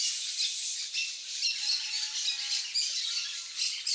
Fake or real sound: real